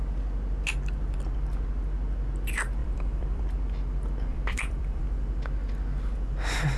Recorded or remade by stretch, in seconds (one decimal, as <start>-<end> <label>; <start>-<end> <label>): 0.0-2.8 recorded; 2.8-3.4 remade; 3.4-4.3 recorded; 4.3-5.0 remade; 5.0-6.8 recorded